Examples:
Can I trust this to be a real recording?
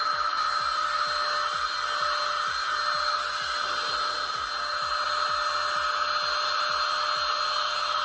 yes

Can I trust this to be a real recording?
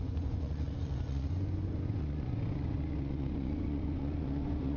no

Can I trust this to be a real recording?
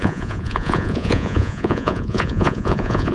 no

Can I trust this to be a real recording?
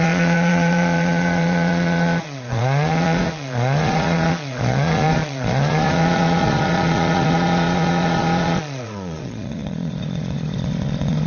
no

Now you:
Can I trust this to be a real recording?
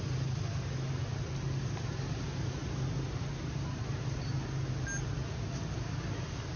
yes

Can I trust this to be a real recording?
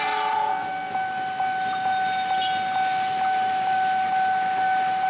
yes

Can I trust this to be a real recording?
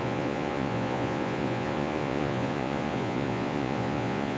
no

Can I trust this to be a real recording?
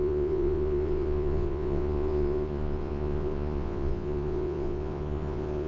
no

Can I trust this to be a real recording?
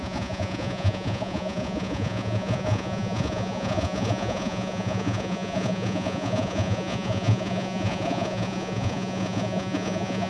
no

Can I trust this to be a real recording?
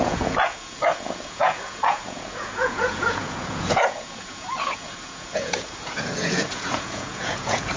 no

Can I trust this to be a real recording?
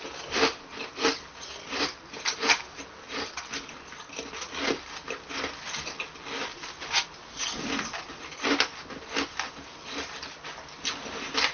yes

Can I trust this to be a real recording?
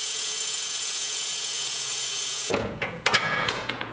no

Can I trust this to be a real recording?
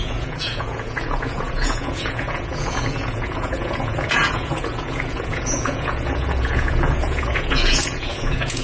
no